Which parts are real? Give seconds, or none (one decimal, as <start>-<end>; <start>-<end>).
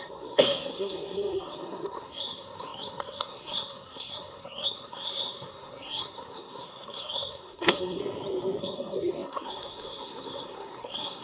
8.0-8.6